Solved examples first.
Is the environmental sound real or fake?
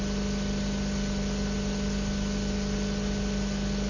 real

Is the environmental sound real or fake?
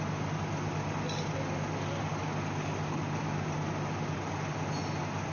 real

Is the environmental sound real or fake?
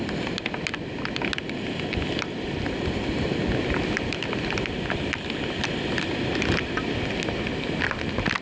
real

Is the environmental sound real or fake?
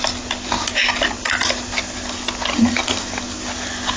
real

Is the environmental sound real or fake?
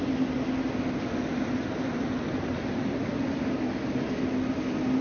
real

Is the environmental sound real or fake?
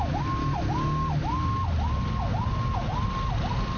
real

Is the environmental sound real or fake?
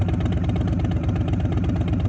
real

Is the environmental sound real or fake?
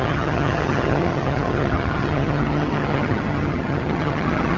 fake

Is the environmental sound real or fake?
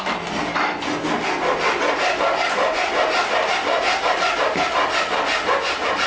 real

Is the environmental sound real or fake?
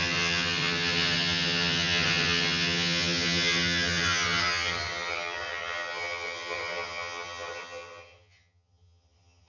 fake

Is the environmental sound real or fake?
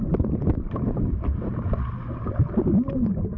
real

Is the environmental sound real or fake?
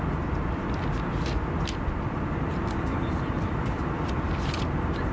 real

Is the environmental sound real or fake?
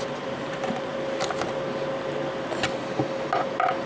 real